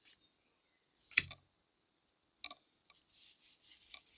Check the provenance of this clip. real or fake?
real